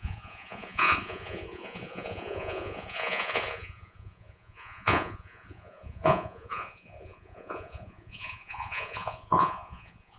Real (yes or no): no